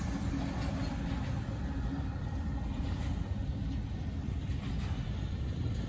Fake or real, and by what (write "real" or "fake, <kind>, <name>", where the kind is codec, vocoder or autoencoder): real